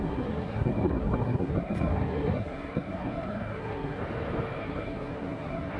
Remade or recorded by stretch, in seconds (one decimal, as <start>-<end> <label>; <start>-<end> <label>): 0.0-4.0 remade; 4.0-4.6 recorded; 4.6-5.8 remade